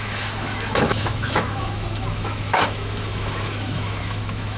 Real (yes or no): no